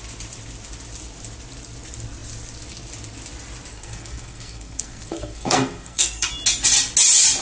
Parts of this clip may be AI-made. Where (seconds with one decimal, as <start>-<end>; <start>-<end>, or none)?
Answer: 3.7-6.3